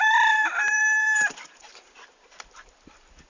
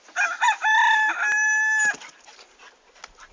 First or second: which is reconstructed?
first